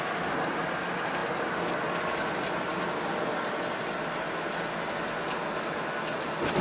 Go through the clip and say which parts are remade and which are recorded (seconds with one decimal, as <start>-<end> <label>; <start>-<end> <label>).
0.0-6.6 recorded